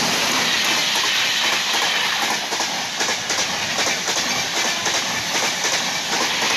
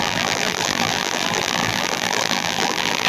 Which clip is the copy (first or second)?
second